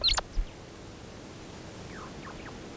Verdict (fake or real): real